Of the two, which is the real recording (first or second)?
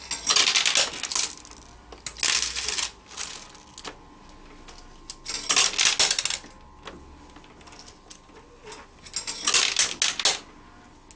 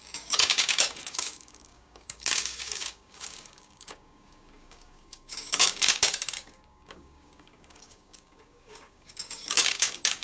first